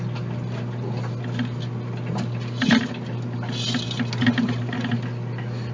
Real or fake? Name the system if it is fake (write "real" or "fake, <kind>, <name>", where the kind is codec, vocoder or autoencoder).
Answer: real